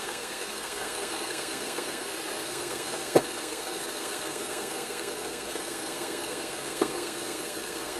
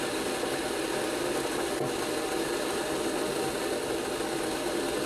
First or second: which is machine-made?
first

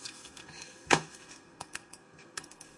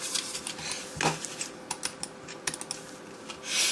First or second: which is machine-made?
first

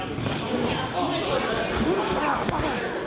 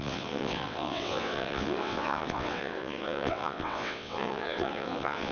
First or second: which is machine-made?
second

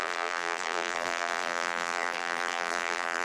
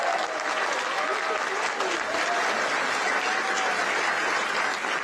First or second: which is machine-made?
first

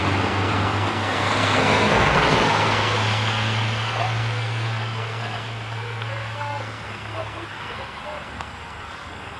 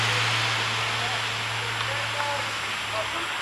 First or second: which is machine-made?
first